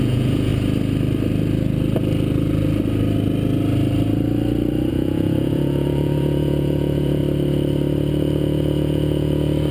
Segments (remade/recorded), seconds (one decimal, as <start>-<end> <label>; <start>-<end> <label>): 0.0-0.5 remade; 0.5-4.9 recorded; 4.9-7.2 remade; 7.2-8.1 recorded; 8.1-9.7 remade